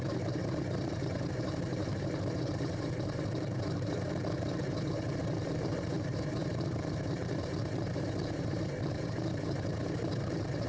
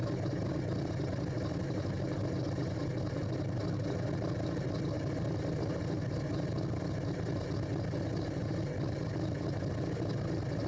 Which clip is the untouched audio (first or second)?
second